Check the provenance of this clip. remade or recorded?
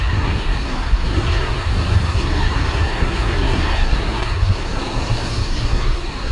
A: remade